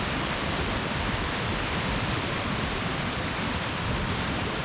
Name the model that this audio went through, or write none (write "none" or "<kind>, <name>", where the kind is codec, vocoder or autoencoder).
vocoder, BigVGAN v2